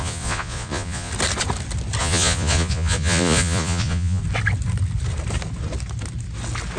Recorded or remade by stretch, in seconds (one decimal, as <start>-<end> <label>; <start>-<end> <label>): 0.0-1.1 remade; 1.1-2.0 recorded; 2.0-4.2 remade; 4.2-6.8 recorded